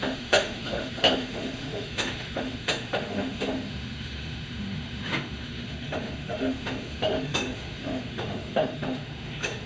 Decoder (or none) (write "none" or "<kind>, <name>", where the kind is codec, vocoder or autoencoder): autoencoder, DAC-VAE